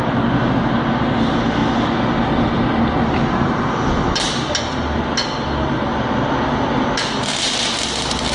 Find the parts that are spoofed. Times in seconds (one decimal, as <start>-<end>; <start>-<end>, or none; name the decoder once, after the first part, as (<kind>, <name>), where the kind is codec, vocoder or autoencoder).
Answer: none